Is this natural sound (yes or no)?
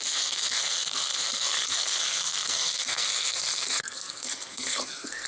no